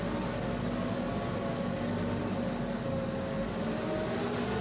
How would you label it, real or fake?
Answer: real